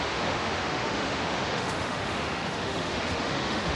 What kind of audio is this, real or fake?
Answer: fake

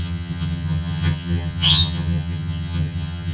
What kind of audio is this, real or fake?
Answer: fake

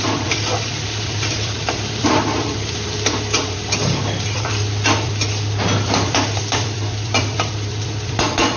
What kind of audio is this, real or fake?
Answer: fake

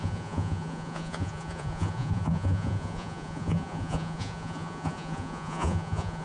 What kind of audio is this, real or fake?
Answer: fake